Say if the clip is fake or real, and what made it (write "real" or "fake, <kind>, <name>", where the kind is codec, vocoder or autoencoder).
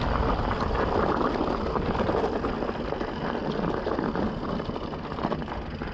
real